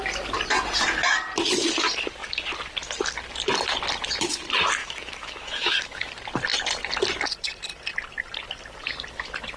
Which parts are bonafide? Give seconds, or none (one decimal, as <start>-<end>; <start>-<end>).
0.0-4.8; 6.1-9.6